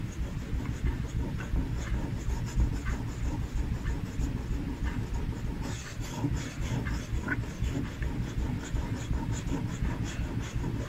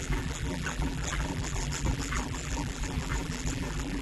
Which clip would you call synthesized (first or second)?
second